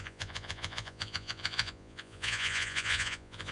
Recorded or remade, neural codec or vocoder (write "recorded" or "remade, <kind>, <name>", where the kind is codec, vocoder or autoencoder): remade, vocoder, Vocos